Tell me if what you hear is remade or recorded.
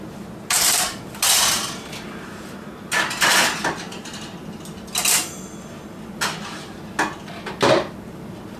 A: recorded